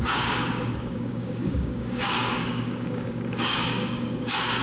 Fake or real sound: fake